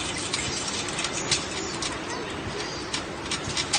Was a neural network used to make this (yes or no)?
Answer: no